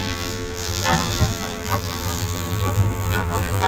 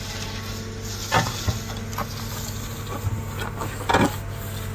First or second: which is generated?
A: first